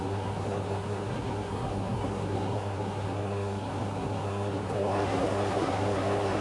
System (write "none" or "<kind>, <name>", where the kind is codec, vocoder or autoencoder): codec, SNAC